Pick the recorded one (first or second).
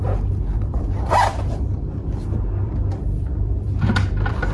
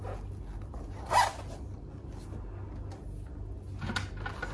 second